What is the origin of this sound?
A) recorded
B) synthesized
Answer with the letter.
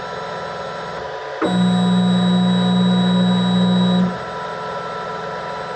A